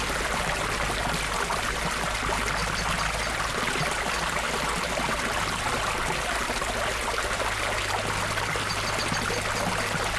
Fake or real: real